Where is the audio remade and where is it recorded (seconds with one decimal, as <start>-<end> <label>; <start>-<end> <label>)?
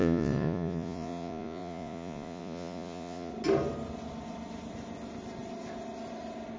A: 0.0-3.3 remade; 3.3-6.6 recorded